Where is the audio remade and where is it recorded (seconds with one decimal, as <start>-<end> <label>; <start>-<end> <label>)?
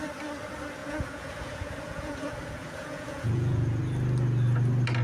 0.0-0.8 recorded; 0.8-3.8 remade; 3.8-5.0 recorded